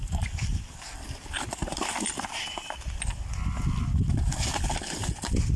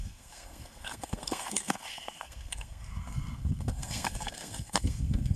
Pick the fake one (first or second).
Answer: second